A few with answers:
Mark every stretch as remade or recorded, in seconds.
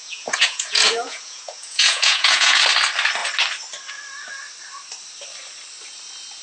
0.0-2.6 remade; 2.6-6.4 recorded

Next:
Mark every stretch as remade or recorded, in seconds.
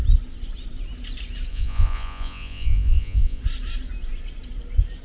0.0-1.5 recorded; 1.5-3.4 remade; 3.4-5.0 recorded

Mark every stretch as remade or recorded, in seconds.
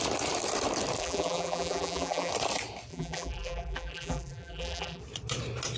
0.0-1.0 recorded; 1.0-2.3 remade; 2.3-2.9 recorded; 2.9-5.0 remade; 5.0-5.8 recorded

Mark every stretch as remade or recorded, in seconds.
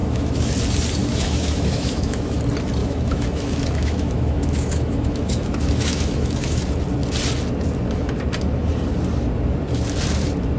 0.0-0.5 remade; 0.5-1.0 recorded; 1.0-2.4 remade; 2.4-2.8 recorded; 2.8-6.6 remade; 6.6-10.6 recorded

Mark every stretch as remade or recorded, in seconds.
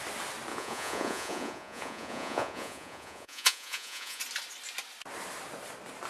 0.0-0.5 recorded; 0.5-4.2 remade; 4.2-6.1 recorded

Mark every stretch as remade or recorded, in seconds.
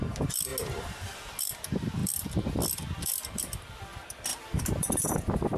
0.0-0.5 remade; 0.5-1.4 recorded; 1.4-5.6 remade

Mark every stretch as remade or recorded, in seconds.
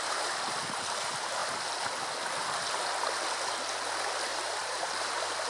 0.0-4.3 recorded; 4.3-4.9 remade; 4.9-5.5 recorded